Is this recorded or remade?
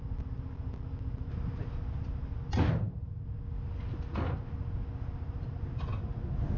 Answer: recorded